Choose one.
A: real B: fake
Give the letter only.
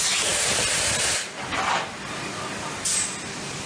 A